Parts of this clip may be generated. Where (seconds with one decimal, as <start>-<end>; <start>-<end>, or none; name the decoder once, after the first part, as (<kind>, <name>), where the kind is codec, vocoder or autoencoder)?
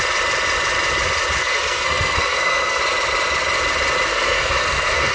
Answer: 1.4-2.8 (codec, SNAC); 4.1-5.1